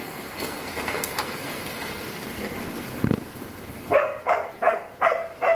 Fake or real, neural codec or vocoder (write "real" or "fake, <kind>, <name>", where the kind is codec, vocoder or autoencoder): fake, codec, SNAC